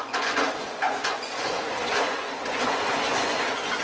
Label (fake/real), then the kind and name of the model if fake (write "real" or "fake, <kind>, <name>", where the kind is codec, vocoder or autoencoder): fake, vocoder, Vocos